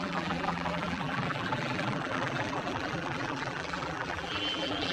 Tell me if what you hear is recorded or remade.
remade